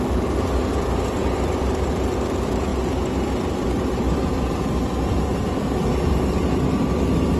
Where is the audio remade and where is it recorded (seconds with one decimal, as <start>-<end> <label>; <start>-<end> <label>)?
0.0-1.2 recorded; 1.2-2.0 remade; 2.0-5.1 recorded; 5.1-6.2 remade; 6.2-7.4 recorded